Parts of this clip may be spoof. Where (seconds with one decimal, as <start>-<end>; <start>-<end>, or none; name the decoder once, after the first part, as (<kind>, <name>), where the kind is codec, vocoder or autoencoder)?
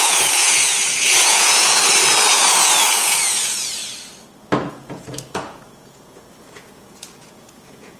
0.0-1.8 (vocoder, Vocos); 2.3-3.8; 4.7-8.0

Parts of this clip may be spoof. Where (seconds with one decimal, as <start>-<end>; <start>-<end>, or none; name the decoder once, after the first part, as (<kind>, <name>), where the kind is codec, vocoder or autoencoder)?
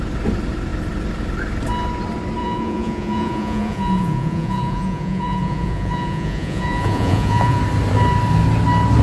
2.4-7.6 (vocoder, Vocos)